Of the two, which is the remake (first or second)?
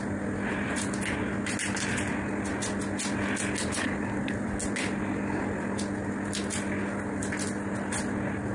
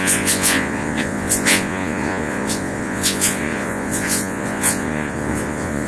second